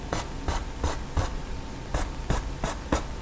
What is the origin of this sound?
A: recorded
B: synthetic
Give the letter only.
A